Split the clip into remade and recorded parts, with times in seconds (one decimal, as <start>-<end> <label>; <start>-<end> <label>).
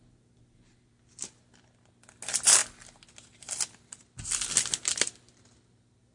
0.0-6.1 recorded